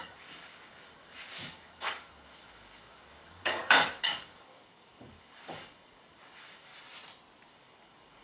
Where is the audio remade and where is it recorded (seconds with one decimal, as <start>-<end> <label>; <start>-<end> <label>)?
0.0-6.7 remade; 6.7-7.5 recorded; 7.5-8.2 remade